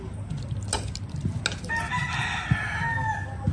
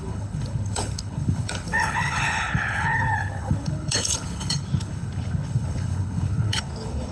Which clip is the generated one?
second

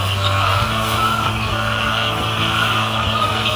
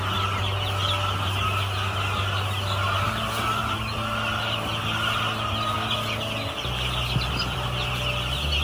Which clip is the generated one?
first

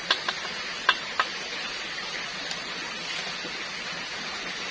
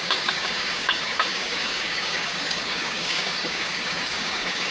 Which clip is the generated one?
second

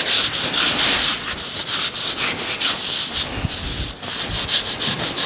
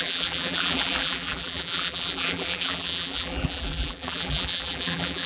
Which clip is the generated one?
second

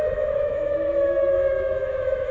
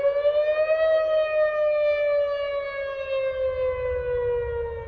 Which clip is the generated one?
first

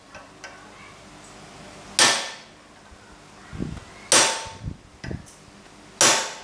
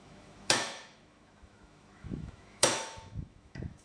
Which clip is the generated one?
second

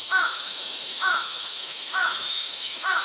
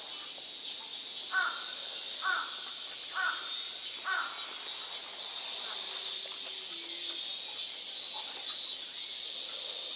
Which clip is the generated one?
first